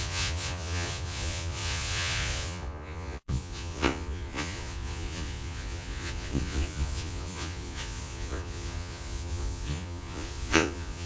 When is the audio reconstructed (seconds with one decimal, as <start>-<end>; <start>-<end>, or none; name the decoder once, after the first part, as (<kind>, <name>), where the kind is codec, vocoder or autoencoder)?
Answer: 0.0-11.1 (vocoder, Vocos)